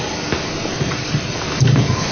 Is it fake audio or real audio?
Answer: real